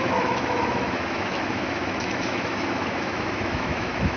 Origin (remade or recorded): remade